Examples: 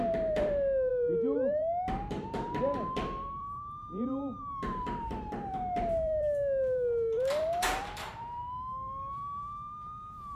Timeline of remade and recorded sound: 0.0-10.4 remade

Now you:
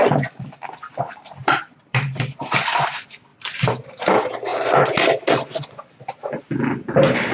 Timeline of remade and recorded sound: 0.0-1.4 recorded; 1.4-2.9 remade; 2.9-3.3 recorded; 3.3-4.0 remade; 4.0-7.3 recorded

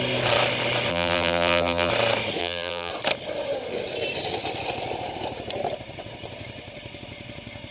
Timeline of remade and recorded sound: 0.0-0.9 recorded; 0.9-1.9 remade; 1.9-2.4 recorded; 2.4-2.9 remade; 2.9-7.7 recorded

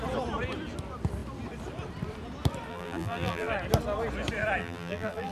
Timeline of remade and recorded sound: 0.0-2.7 recorded; 2.7-3.5 remade; 3.5-4.6 recorded; 4.6-5.3 remade

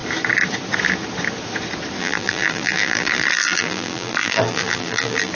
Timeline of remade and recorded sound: 0.0-2.0 recorded; 2.0-5.3 remade

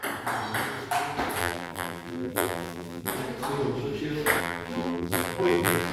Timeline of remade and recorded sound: 0.0-1.4 recorded; 1.4-3.1 remade; 3.1-4.4 recorded; 4.4-5.9 remade